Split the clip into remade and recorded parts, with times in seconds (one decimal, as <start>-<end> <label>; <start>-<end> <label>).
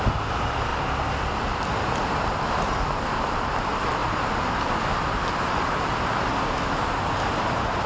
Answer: 0.0-7.9 recorded